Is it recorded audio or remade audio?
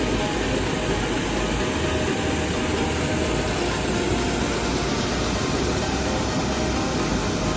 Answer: recorded